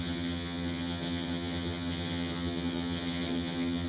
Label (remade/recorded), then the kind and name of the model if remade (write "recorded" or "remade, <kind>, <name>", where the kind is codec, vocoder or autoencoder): remade, vocoder, HiFi-GAN